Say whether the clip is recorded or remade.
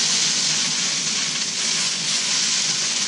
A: remade